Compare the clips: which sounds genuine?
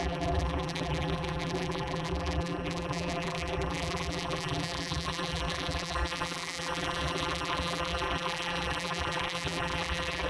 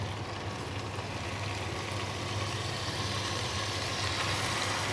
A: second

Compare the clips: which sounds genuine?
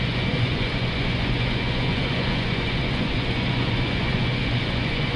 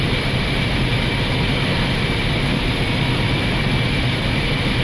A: second